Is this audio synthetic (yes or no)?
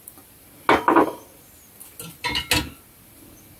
no